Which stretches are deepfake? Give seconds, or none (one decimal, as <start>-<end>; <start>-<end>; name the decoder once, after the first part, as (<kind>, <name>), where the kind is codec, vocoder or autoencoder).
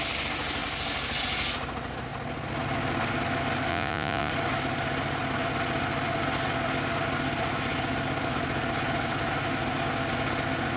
3.7-4.3 (vocoder, Vocos)